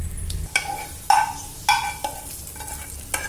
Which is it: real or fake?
real